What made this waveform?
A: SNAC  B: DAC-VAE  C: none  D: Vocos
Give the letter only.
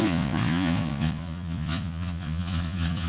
D